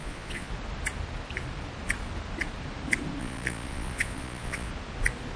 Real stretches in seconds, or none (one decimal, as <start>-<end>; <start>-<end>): 0.5-3.2; 4.7-5.4